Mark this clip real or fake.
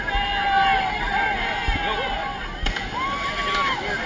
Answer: real